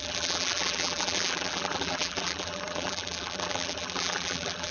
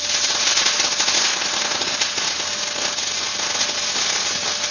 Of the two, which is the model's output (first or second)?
first